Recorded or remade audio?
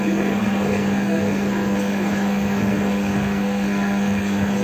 remade